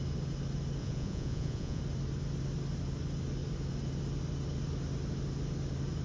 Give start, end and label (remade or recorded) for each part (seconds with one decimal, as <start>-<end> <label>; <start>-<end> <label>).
0.0-0.8 recorded; 0.8-1.8 remade; 1.8-6.0 recorded